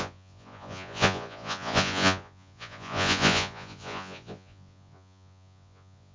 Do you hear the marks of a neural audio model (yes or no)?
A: yes